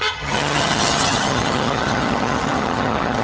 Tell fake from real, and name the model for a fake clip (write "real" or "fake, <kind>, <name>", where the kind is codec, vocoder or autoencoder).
fake, vocoder, HiFi-GAN